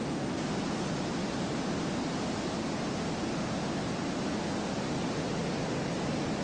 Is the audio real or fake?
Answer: real